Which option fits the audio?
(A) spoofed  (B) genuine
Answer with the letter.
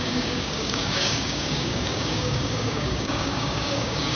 A